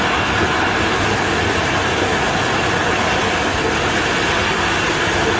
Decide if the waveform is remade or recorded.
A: recorded